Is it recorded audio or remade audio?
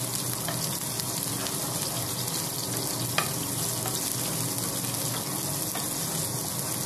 recorded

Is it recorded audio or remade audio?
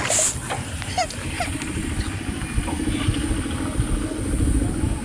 recorded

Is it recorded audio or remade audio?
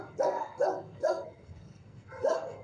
remade